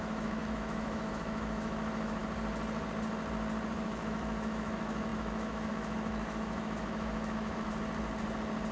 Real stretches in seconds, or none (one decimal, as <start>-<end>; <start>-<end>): 2.2-3.7; 7.7-8.7